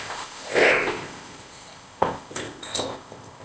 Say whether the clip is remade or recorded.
remade